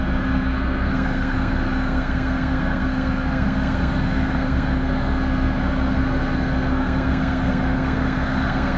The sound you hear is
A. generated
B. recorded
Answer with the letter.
A